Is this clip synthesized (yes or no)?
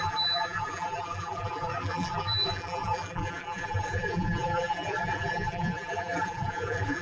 yes